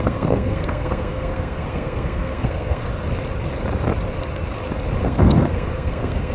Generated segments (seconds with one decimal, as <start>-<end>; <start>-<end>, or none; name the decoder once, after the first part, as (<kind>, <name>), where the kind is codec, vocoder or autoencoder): 0.0-2.9 (codec, SNAC); 5.0-6.3

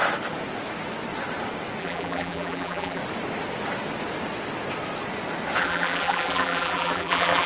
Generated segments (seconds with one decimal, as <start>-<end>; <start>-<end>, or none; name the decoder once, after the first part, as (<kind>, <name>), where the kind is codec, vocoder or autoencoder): 1.8-3.0 (vocoder, BigVGAN v2); 5.6-7.5

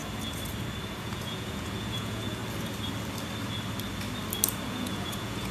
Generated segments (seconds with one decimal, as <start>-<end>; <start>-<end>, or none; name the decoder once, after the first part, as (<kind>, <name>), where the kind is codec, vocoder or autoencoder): 1.0-2.4 (vocoder, Vocos); 4.7-5.5

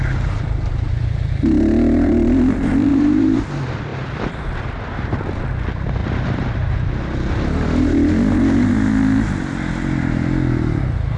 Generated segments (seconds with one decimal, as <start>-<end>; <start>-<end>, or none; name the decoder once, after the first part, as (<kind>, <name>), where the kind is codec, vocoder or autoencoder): 2.9-3.4 (vocoder, BigVGAN v2); 3.9-5.4; 6.0-6.9

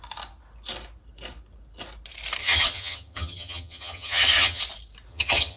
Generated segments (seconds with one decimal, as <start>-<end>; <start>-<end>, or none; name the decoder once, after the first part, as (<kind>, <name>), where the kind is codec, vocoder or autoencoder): 2.4-4.6 (vocoder, HiFi-GAN); 5.1-5.6

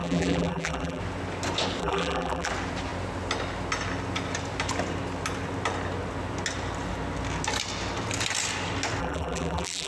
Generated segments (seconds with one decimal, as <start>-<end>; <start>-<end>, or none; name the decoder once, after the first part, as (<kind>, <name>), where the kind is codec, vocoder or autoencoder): 0.0-1.0 (vocoder, BigVGAN v2); 1.8-2.5; 9.0-9.9

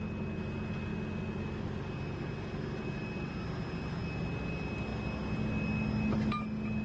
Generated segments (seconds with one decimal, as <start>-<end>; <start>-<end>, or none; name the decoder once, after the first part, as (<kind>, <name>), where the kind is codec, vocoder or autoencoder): none

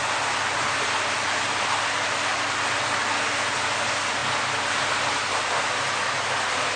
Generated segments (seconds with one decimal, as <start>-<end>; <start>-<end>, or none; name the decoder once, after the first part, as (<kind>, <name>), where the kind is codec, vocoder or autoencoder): none